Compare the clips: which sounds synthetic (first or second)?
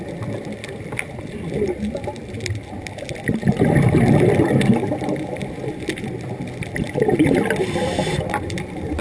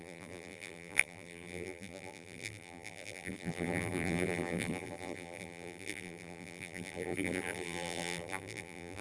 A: second